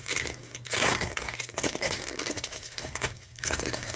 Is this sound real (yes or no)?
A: no